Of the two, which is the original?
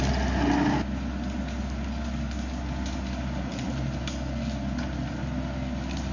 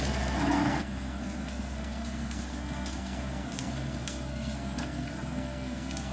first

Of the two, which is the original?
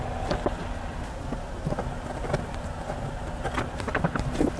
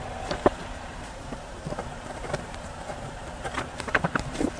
first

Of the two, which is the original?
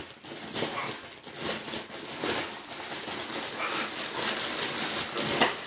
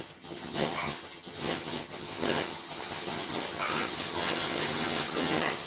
first